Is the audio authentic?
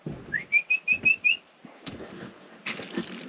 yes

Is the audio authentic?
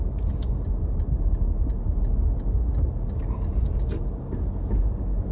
yes